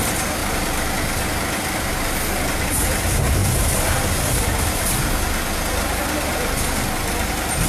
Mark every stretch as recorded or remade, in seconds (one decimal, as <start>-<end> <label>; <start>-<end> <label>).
0.0-7.7 recorded